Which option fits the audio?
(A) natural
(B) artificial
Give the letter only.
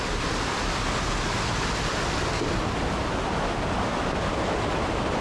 A